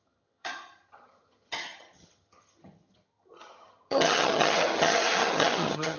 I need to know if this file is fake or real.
fake